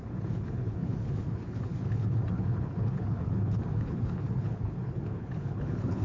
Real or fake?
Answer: fake